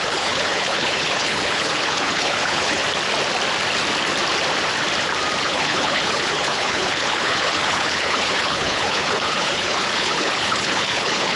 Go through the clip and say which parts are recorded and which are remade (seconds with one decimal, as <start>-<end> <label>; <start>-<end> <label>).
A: 0.0-2.8 remade; 2.8-5.4 recorded; 5.4-11.4 remade